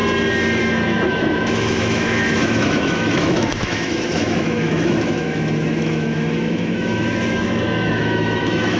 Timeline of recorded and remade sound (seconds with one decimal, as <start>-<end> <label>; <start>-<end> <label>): 0.0-0.6 recorded; 0.6-8.8 remade